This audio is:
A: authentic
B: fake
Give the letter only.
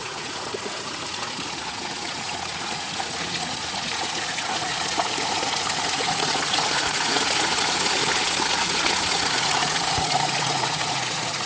B